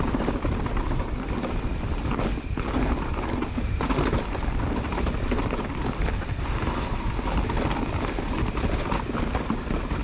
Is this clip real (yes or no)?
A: yes